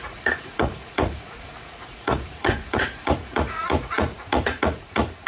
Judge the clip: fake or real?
fake